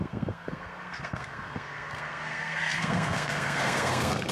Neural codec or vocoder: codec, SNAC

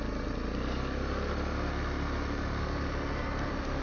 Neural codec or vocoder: none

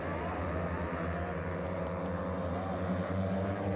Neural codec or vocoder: none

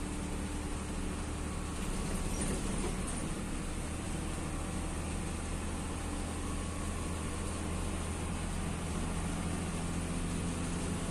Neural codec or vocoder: none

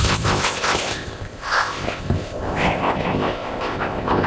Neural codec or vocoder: codec, ZipCodec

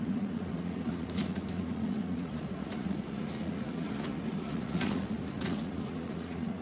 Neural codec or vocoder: vocoder, Vocos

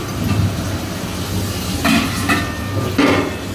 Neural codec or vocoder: none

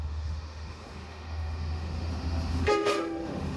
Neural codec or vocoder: autoencoder, DAC-VAE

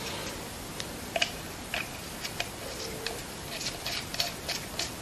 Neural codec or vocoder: vocoder, BigVGAN v2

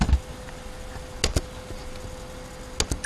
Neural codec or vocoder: none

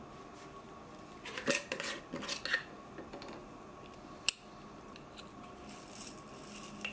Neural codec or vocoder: none